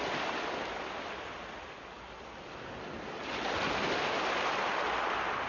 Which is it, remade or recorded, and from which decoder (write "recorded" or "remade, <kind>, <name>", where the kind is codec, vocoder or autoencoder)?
recorded